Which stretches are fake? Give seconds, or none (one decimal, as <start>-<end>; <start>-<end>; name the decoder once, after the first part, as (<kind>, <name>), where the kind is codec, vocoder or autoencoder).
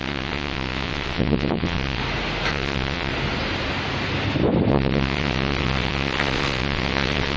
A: 0.0-2.0 (vocoder, WaveNeXt); 2.5-3.1; 4.7-7.4